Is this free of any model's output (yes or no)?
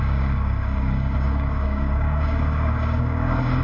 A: no